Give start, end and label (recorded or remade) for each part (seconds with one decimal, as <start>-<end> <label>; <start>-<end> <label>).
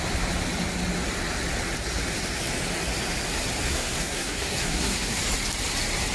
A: 0.0-3.7 recorded; 3.7-5.2 remade; 5.2-6.1 recorded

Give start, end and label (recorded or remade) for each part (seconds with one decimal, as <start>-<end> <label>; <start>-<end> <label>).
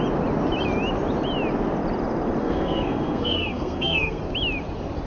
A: 0.0-2.4 recorded; 2.4-4.2 remade; 4.2-5.1 recorded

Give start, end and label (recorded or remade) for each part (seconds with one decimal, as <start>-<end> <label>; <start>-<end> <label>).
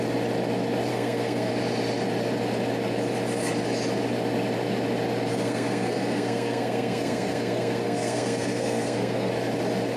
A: 0.0-0.9 recorded; 0.9-1.5 remade; 1.5-5.3 recorded; 5.3-9.3 remade; 9.3-10.0 recorded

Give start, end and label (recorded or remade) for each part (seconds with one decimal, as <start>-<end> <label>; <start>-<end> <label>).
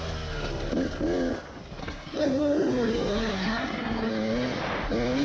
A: 0.0-1.8 recorded; 1.8-4.1 remade; 4.1-5.2 recorded